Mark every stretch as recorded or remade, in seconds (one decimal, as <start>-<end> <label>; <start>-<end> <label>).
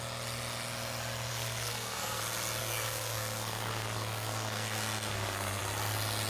0.0-1.3 recorded; 1.3-2.2 remade; 2.2-2.6 recorded; 2.6-5.6 remade; 5.6-6.3 recorded